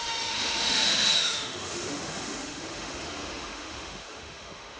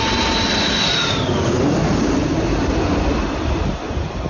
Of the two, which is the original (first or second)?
second